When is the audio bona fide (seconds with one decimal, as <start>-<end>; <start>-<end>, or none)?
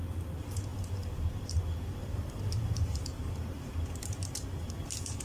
0.0-0.7; 1.6-2.0